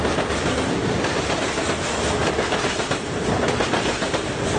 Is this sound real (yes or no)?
yes